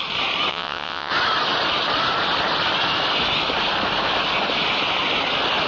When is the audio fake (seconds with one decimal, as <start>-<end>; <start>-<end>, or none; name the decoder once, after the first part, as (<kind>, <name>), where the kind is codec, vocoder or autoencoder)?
0.5-1.1 (vocoder, WaveNeXt)